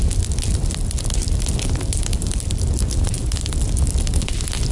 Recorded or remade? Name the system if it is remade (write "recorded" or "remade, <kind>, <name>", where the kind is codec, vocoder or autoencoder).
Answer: recorded